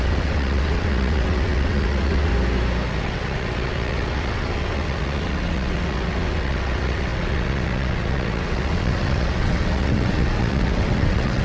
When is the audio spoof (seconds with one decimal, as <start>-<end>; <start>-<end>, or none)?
0.0-2.3; 2.9-11.4